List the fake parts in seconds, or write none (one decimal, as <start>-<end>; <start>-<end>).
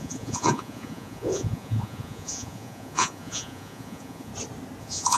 0.0-4.3; 4.8-5.2